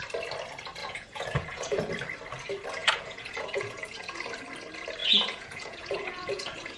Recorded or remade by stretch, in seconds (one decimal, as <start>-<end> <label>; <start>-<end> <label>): 0.0-0.8 recorded; 0.8-1.9 remade; 1.9-2.8 recorded; 2.8-4.2 remade; 4.2-5.0 recorded; 5.0-6.8 remade